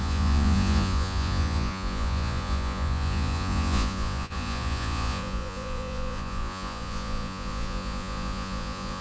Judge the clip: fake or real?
fake